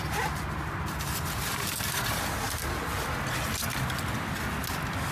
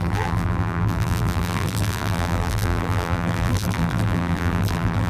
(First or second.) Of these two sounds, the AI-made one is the second